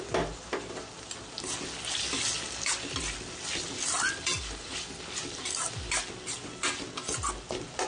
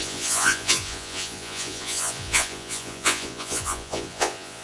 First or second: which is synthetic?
second